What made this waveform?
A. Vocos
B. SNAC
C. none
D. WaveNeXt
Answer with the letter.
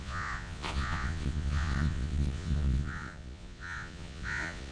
A